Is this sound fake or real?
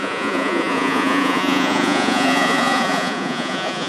fake